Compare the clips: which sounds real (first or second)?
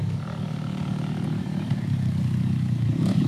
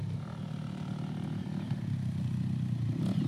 second